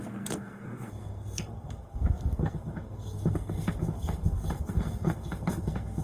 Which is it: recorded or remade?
remade